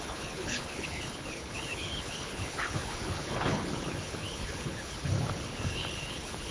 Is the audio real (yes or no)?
no